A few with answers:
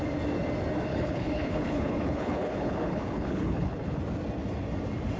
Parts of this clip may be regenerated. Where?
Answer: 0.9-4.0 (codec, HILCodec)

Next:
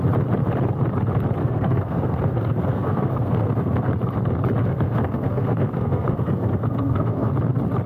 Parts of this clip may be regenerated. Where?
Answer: 1.4-3.9 (codec, SNAC); 4.6-7.3